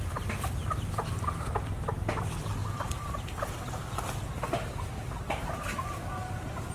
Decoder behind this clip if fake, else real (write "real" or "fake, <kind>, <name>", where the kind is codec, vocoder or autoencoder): real